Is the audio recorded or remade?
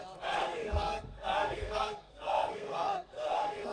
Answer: remade